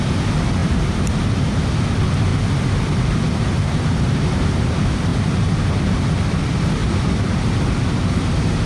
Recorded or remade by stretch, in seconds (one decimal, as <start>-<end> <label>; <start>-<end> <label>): 0.0-0.6 recorded; 0.6-1.1 remade; 1.1-2.3 recorded; 2.3-4.5 remade; 4.5-5.1 recorded; 5.1-6.0 remade; 6.0-6.8 recorded; 6.8-7.4 remade; 7.4-8.7 recorded